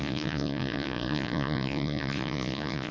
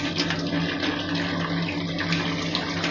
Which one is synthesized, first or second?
first